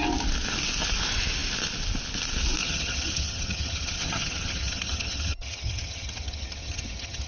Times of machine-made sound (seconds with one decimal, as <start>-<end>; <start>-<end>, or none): 2.6-7.3